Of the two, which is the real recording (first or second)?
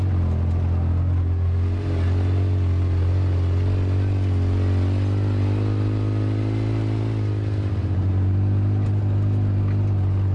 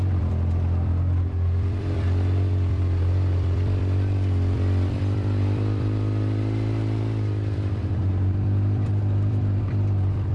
first